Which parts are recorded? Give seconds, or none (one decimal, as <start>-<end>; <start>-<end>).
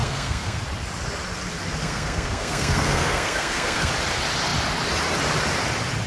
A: 0.6-1.8; 3.9-6.1